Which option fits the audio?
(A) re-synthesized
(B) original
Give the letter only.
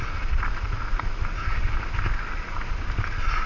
B